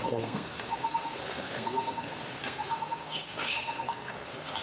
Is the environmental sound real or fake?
fake